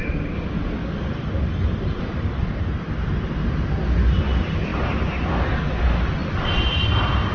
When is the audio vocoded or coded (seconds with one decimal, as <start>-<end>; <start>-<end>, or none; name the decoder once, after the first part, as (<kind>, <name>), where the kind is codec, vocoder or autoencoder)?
none